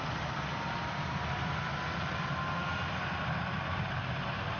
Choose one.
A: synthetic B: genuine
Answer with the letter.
B